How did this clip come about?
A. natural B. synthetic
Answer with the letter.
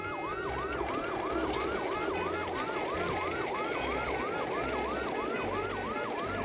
A